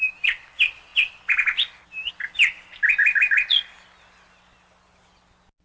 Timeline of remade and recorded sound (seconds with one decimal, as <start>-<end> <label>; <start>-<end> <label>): 0.0-5.6 recorded